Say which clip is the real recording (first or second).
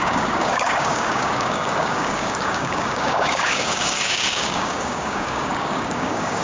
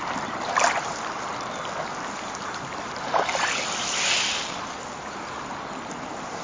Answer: second